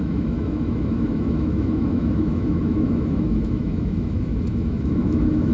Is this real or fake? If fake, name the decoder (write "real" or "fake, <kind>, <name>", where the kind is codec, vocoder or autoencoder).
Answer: fake, autoencoder, DAC-VAE